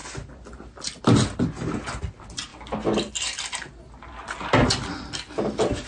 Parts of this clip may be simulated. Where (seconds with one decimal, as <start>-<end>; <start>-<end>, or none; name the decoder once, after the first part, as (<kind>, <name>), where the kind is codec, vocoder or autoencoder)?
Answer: none